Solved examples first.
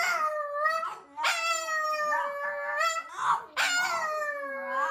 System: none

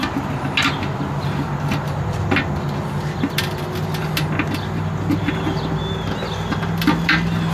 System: none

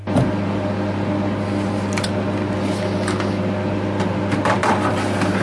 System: vocoder, BigVGAN v2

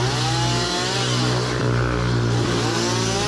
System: none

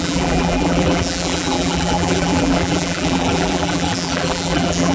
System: vocoder, BigVGAN v2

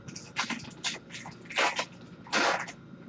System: none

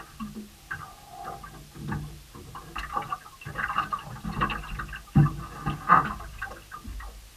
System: none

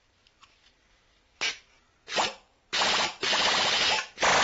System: none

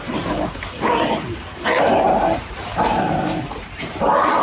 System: vocoder, BigVGAN v2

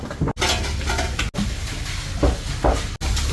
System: none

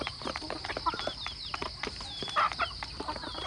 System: none